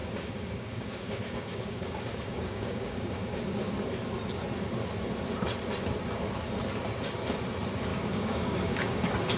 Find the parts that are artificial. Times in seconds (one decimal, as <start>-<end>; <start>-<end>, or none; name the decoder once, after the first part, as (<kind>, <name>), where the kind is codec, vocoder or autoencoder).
0.0-3.4 (codec, DAC); 7.9-9.0